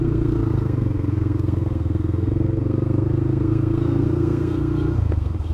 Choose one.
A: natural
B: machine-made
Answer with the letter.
B